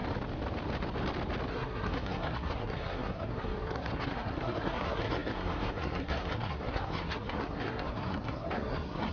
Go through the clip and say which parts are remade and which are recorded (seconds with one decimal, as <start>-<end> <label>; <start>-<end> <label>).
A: 0.0-1.5 recorded; 1.5-9.1 remade